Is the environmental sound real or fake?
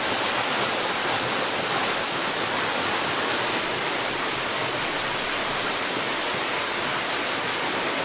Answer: real